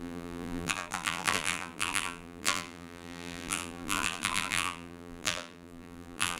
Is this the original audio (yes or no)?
no